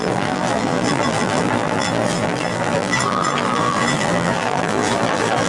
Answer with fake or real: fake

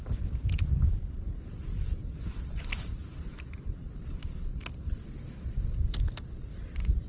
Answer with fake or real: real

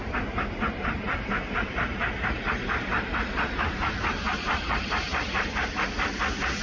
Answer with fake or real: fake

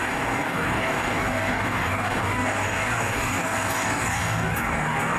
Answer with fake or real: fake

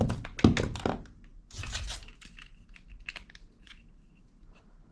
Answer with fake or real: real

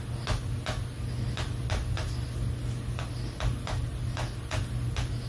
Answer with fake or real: real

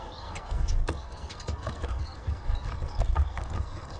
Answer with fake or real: fake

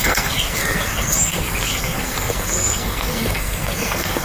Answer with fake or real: fake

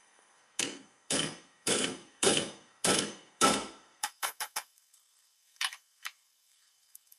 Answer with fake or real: fake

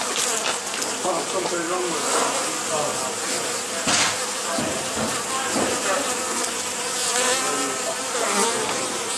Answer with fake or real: real